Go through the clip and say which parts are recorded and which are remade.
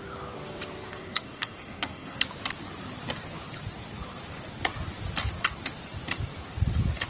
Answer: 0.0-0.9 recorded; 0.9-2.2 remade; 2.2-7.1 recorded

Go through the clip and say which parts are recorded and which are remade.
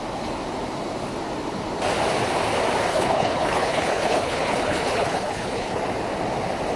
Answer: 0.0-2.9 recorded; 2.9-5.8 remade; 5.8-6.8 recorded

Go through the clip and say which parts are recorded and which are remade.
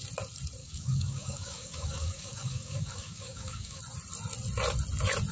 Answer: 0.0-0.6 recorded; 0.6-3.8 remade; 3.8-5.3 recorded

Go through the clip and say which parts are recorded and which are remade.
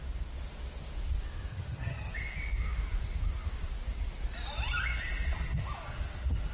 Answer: 0.0-1.5 recorded; 1.5-2.1 remade; 2.1-6.5 recorded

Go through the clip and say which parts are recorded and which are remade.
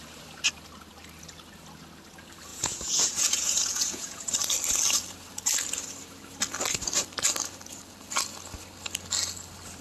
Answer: 0.0-2.5 recorded; 2.5-4.3 remade; 4.3-9.8 recorded